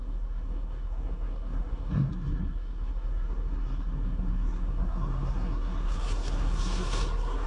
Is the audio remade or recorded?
remade